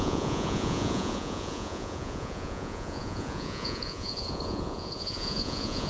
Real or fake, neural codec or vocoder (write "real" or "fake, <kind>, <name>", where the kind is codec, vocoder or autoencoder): fake, vocoder, Vocos